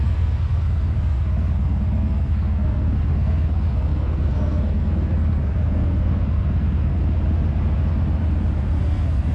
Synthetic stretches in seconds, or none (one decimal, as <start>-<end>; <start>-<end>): 0.0-7.0; 8.8-9.3

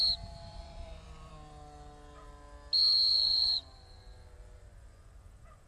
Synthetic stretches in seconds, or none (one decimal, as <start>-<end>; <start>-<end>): 0.5-1.3; 3.1-5.7